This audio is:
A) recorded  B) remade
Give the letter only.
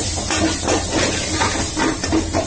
A